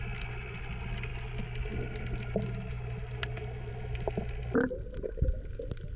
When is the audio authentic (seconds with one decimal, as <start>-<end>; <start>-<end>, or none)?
0.0-6.0